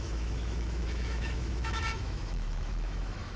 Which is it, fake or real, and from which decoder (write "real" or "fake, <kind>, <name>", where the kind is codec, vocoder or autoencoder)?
fake, autoencoder, DAC-VAE